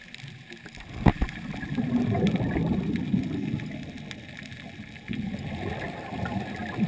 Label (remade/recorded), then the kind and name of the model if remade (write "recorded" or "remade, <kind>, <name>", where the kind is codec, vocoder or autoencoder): recorded